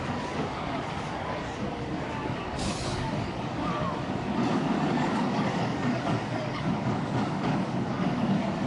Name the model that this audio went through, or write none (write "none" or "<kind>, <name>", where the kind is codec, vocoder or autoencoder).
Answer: codec, DAC